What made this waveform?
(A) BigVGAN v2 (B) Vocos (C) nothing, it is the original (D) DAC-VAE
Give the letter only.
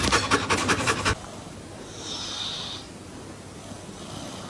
C